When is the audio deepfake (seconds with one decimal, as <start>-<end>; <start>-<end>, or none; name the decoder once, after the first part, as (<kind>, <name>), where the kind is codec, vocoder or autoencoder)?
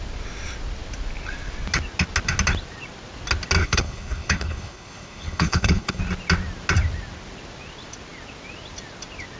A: 3.6-6.0 (codec, HILCodec)